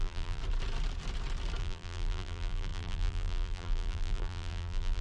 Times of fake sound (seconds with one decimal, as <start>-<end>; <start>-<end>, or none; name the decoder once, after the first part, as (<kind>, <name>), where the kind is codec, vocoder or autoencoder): 0.0-0.4 (vocoder, BigVGAN v2); 1.6-5.0